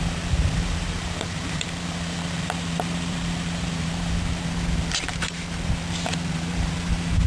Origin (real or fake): fake